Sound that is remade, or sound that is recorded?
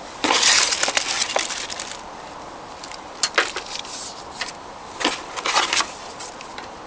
recorded